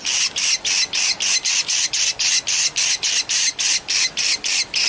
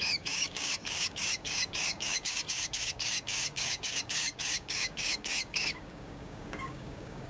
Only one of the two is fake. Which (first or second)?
second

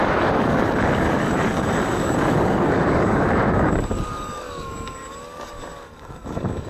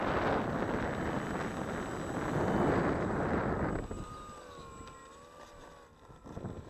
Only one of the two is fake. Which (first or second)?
first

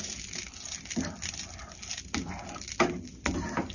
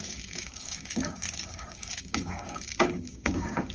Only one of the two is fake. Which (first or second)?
second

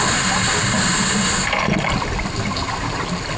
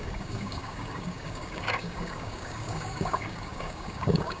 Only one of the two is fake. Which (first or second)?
second